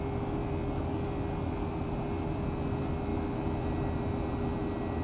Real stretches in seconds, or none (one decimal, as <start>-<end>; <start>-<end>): 0.0-5.0